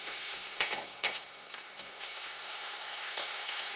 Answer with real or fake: fake